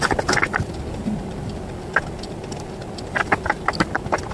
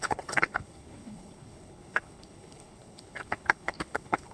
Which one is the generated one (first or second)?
second